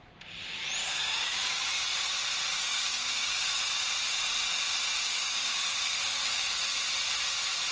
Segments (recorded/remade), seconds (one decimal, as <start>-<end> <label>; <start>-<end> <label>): 0.0-0.8 recorded; 0.8-1.7 remade; 1.7-2.5 recorded; 2.5-3.6 remade; 3.6-5.0 recorded; 5.0-6.6 remade; 6.6-7.7 recorded

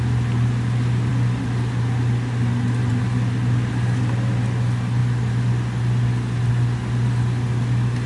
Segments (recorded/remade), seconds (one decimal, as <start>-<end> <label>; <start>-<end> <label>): 0.0-8.1 recorded

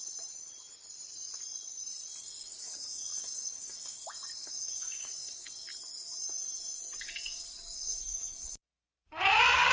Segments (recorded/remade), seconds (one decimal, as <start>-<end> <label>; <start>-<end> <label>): 0.0-2.2 recorded; 2.2-5.7 remade; 5.7-7.0 recorded; 7.0-9.7 remade